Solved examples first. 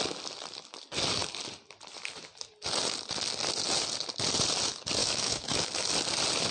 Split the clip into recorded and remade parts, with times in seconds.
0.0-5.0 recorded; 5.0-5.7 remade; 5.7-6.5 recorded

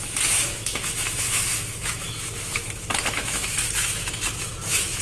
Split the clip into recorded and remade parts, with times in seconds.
0.0-5.0 remade

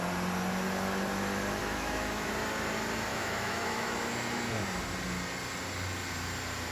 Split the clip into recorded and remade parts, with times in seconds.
0.0-1.6 recorded; 1.6-2.3 remade; 2.3-3.1 recorded; 3.1-4.1 remade; 4.1-6.7 recorded

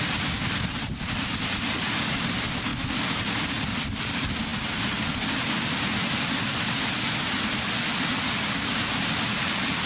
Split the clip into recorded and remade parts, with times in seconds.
0.0-9.9 recorded